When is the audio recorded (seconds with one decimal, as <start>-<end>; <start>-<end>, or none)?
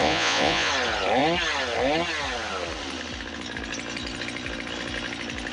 0.7-5.5